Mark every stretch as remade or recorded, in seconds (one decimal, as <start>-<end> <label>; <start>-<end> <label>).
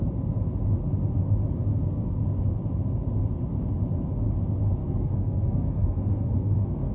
0.0-1.7 recorded; 1.7-2.2 remade; 2.2-4.8 recorded; 4.8-6.9 remade